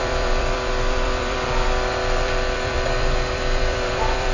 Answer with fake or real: fake